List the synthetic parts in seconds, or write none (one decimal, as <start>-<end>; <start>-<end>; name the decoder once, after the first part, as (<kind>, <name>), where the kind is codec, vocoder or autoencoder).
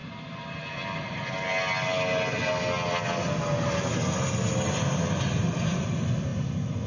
none